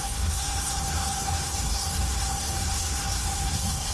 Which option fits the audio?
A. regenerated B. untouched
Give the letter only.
A